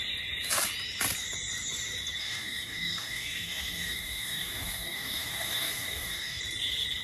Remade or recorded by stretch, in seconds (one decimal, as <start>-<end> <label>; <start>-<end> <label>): 0.0-2.2 recorded; 2.2-6.4 remade; 6.4-7.0 recorded